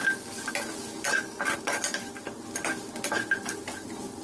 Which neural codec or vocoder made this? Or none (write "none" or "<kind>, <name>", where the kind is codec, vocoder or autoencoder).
none